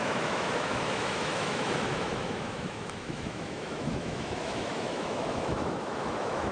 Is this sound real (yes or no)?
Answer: no